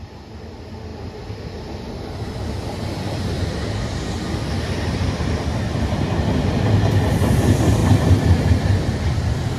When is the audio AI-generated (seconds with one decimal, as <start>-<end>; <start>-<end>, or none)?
none